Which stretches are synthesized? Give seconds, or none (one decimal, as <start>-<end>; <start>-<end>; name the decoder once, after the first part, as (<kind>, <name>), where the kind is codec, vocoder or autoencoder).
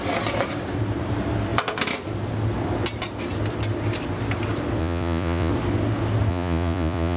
4.8-5.5 (vocoder, Vocos); 6.3-7.2